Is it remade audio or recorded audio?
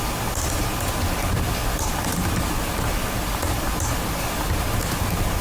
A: recorded